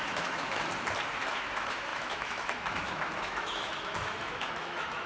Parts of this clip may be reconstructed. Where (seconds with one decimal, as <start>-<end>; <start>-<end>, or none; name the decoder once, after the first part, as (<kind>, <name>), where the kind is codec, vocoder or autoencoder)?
0.0-0.7 (autoencoder, DAC-VAE); 1.3-5.1